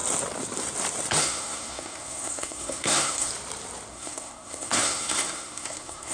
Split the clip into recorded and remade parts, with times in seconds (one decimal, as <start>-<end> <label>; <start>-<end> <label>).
0.0-1.2 recorded; 1.2-3.3 remade; 3.3-3.9 recorded; 3.9-6.1 remade